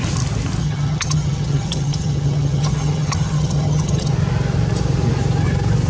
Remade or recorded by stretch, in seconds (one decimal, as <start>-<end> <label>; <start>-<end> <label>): 0.0-0.6 recorded; 0.6-4.1 remade; 4.1-5.9 recorded